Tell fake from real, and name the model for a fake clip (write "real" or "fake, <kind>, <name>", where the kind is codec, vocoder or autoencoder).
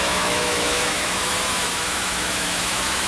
fake, autoencoder, DAC-VAE